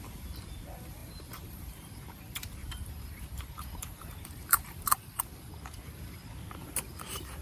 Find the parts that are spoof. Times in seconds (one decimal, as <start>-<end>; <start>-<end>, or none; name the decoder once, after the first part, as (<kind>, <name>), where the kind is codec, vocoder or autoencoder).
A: 1.0-2.2 (vocoder, BigVGAN v2); 2.6-5.2

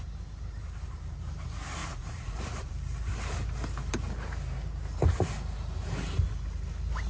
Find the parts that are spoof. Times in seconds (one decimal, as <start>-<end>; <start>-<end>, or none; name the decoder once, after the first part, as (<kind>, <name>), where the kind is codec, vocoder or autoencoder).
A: 1.8-2.7 (vocoder, Vocos)

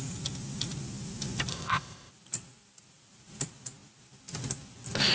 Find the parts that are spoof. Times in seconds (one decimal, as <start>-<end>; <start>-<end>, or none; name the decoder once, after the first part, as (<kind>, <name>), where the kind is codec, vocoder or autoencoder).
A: 1.5-2.1 (codec, ZipCodec)

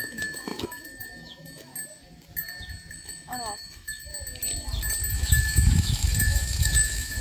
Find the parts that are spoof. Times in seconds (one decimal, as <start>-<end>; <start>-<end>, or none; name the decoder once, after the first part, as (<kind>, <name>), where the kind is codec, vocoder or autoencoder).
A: 0.0-1.7 (autoencoder, DAC-VAE); 2.9-4.1; 5.1-7.2

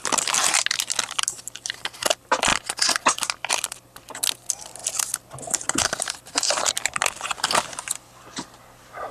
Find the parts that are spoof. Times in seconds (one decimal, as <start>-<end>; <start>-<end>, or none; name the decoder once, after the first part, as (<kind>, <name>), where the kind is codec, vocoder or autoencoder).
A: none